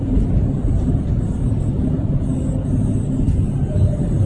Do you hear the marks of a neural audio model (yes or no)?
no